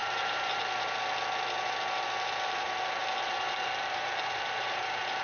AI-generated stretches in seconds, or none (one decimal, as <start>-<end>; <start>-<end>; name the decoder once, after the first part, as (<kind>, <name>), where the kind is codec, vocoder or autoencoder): 0.0-0.6 (vocoder, BigVGAN v2); 3.0-5.2